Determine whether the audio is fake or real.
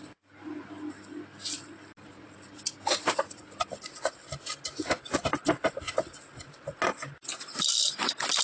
real